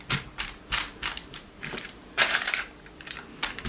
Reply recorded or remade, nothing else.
remade